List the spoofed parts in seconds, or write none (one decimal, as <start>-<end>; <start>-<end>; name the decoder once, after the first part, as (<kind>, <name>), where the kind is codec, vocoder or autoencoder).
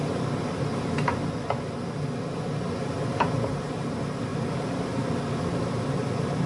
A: 4.3-6.5 (vocoder, BigVGAN v2)